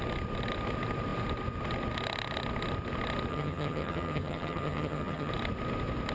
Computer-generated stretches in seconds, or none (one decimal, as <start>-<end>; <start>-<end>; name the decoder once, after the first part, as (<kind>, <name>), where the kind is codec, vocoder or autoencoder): 3.3-5.3 (vocoder, HiFi-GAN)